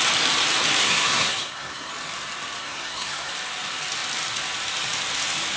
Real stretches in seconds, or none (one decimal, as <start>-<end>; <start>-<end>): 0.0-0.8; 1.9-2.6; 3.3-5.6